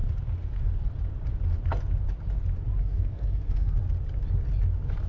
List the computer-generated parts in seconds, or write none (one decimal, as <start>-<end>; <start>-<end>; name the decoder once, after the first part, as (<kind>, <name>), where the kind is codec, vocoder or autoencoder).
2.8-3.8 (codec, SNAC)